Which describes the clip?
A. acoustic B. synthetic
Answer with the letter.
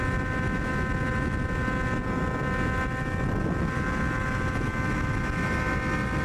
A